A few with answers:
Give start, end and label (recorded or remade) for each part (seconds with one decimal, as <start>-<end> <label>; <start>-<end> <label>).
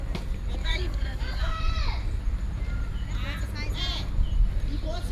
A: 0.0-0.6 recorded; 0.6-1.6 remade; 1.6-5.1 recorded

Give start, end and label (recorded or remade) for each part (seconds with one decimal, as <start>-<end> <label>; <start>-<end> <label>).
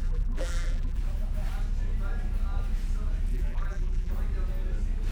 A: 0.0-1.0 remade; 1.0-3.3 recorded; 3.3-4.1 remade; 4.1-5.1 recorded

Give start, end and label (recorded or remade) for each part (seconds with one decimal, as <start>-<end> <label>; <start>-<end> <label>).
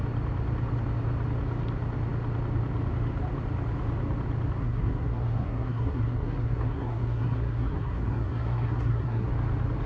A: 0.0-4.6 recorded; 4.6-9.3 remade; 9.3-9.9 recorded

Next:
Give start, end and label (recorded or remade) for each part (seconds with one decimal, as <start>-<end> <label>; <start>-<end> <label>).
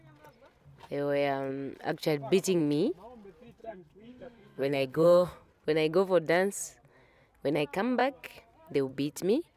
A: 0.0-3.6 recorded; 3.6-5.5 remade; 5.5-9.6 recorded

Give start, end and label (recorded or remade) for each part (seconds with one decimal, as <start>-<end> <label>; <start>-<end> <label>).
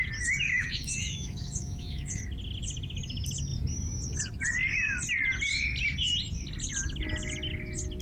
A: 0.0-0.5 recorded; 0.5-2.2 remade; 2.2-8.0 recorded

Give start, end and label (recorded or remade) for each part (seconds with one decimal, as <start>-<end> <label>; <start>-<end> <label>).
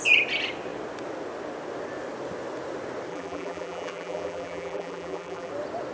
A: 0.0-3.1 recorded; 3.1-5.5 remade; 5.5-5.9 recorded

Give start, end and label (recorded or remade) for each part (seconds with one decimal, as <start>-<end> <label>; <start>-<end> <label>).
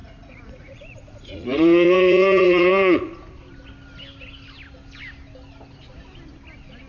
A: 0.0-3.1 remade; 3.1-6.9 recorded